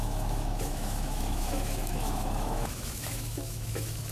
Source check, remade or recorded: remade